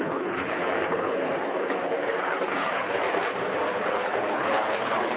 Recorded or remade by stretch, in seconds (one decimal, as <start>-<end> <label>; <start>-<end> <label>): 0.0-3.0 remade; 3.0-3.9 recorded; 3.9-5.2 remade